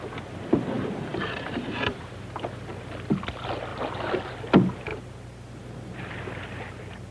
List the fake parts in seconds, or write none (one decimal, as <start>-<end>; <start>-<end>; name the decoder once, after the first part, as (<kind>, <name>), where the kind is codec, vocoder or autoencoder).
1.1-2.3 (vocoder, BigVGAN v2); 3.7-4.4; 4.9-6.0